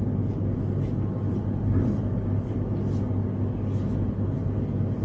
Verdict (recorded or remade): recorded